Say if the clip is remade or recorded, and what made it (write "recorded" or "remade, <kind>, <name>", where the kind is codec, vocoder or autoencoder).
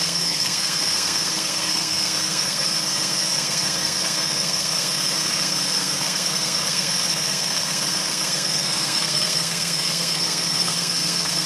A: remade, codec, SNAC